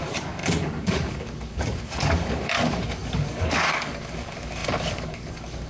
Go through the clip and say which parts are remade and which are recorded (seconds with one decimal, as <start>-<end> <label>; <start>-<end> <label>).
0.0-5.7 remade